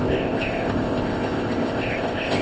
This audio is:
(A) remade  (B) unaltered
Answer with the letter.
A